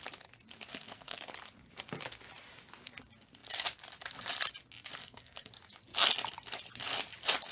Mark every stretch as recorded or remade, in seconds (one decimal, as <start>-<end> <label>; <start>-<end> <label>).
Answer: 0.0-0.7 recorded; 0.7-1.2 remade; 1.2-5.0 recorded; 5.0-5.5 remade; 5.5-7.5 recorded